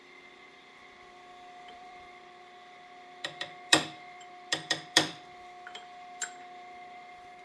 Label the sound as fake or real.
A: fake